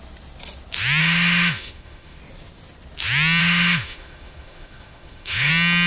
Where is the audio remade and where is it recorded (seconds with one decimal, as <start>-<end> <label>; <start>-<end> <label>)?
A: 0.0-1.0 recorded; 1.0-2.2 remade; 2.2-3.4 recorded; 3.4-5.5 remade; 5.5-5.9 recorded